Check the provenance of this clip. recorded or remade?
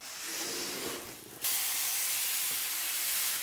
recorded